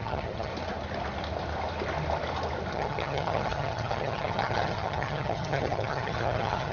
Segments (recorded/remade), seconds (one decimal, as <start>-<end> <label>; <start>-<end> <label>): 0.0-0.5 remade; 0.5-2.7 recorded; 2.7-6.7 remade